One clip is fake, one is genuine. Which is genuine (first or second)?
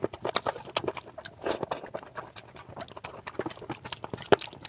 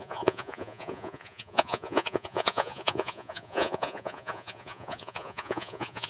first